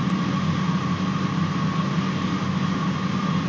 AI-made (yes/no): no